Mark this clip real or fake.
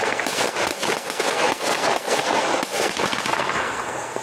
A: fake